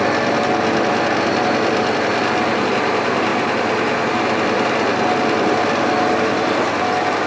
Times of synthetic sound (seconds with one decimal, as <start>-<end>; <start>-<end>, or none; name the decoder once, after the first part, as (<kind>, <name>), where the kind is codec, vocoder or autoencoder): none